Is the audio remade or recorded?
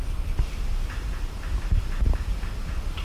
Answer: recorded